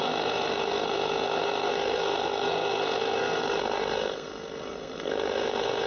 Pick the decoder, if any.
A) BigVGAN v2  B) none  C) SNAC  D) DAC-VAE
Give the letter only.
C